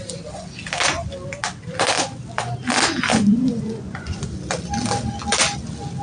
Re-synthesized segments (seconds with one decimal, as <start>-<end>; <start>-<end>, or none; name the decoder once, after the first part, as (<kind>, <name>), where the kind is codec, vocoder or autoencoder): 3.1-4.2 (vocoder, Vocos)